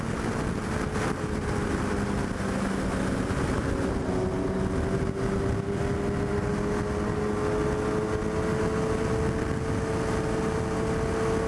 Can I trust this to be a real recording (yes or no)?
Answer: yes